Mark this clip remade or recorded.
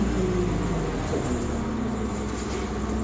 recorded